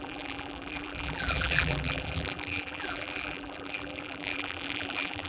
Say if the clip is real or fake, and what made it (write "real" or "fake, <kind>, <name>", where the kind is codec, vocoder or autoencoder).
fake, vocoder, BigVGAN v2